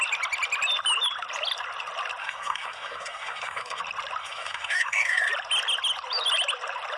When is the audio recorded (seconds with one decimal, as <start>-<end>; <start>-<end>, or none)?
0.0-2.2; 3.8-4.2; 5.3-7.0